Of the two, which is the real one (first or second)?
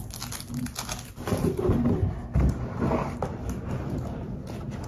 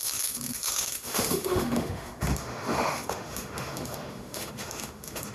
first